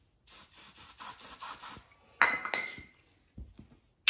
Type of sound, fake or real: real